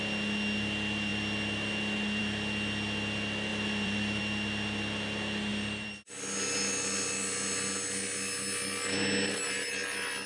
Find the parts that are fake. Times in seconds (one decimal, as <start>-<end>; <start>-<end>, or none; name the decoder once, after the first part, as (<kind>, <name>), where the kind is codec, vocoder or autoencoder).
3.5-4.2 (vocoder, BigVGAN v2); 5.5-6.1